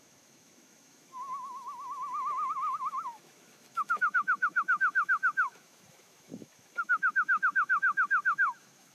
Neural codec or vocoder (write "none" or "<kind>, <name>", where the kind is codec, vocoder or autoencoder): autoencoder, DAC-VAE